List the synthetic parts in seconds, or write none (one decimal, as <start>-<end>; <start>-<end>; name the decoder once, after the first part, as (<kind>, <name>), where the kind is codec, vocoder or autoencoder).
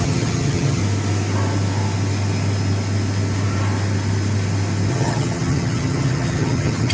0.0-0.8 (vocoder, HiFi-GAN); 4.9-6.9